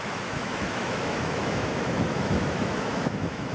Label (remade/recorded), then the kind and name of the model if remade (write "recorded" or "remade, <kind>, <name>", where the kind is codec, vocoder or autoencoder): remade, autoencoder, DAC-VAE